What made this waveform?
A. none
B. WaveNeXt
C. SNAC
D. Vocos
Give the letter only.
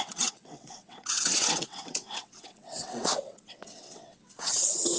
B